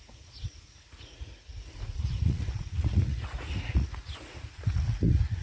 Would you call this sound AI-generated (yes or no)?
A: yes